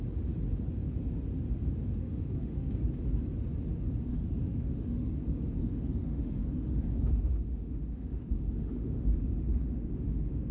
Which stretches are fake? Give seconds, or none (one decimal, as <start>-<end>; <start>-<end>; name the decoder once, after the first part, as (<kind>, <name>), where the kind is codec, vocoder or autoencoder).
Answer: 2.0-2.7 (autoencoder, DAC-VAE); 4.1-5.1; 5.6-10.5